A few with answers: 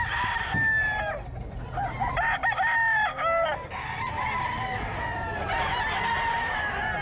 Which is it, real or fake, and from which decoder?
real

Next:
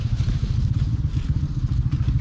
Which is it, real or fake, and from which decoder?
fake, vocoder, BigVGAN v2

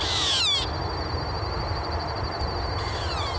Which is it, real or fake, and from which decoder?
real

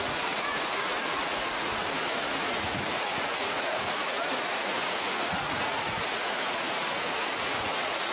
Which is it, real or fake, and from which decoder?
fake, vocoder, Vocos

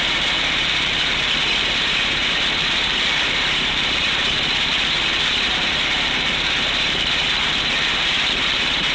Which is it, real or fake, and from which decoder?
fake, vocoder, BigVGAN v2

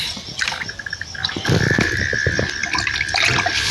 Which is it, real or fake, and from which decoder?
real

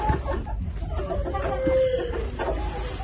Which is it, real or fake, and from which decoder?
real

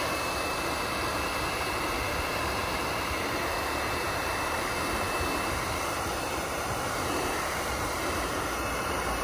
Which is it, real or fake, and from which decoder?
fake, vocoder, BigVGAN v2